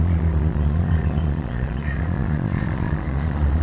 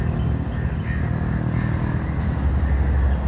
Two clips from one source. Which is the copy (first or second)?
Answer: first